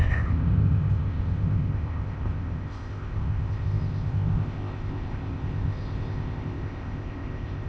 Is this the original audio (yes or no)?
no